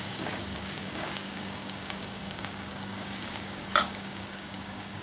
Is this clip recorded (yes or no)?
no